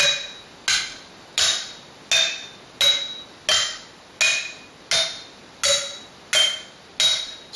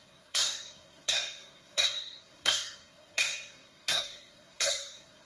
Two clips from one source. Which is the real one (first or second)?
first